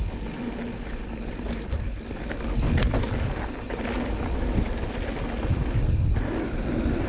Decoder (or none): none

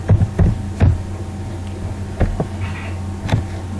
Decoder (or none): none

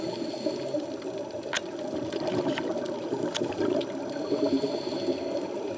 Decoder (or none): none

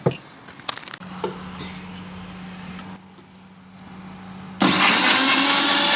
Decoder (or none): none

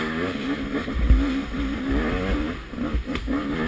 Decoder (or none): none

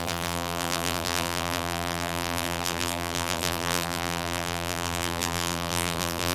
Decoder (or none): vocoder, BigVGAN v2